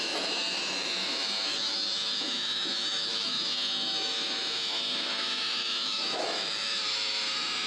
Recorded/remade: remade